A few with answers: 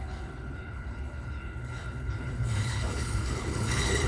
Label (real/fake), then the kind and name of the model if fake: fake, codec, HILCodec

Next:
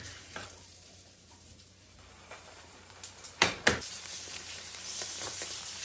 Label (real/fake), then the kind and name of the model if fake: fake, vocoder, BigVGAN v2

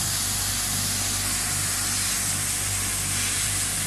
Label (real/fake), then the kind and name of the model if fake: real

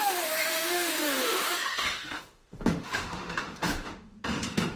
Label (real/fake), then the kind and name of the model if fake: fake, autoencoder, DAC-VAE